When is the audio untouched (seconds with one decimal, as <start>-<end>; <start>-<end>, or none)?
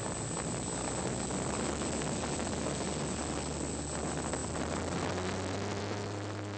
0.0-6.6